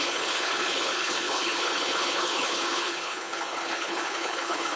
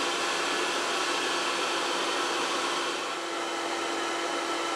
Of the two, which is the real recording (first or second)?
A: second